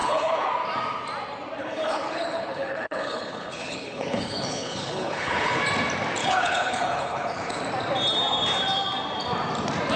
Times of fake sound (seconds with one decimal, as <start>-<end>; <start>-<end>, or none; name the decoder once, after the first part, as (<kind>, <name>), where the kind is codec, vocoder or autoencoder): 0.0-0.5 (codec, HILCodec); 1.6-5.6; 6.2-7.6